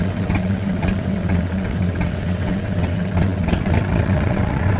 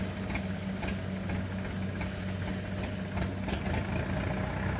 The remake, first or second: first